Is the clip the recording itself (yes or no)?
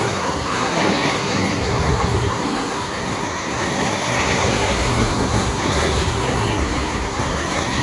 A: no